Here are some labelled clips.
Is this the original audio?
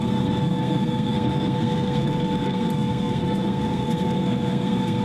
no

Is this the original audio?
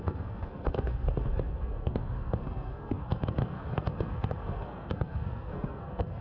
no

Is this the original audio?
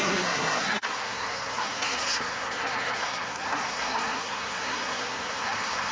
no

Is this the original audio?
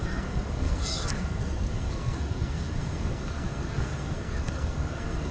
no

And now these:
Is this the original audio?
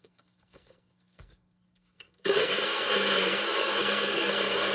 no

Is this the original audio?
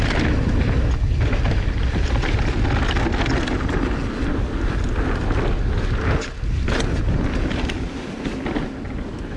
yes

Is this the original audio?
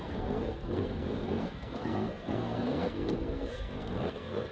no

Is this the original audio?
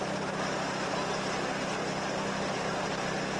yes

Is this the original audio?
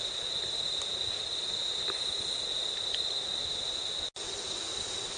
yes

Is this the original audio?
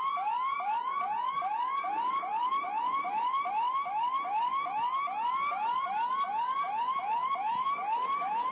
yes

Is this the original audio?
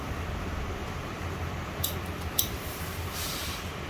yes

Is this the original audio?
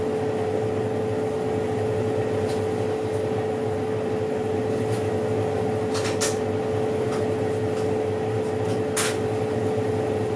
yes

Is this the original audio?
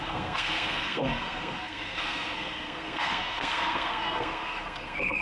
no